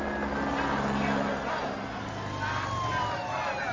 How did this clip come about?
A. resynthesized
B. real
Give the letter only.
B